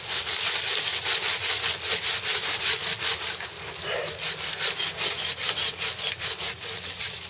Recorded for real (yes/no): yes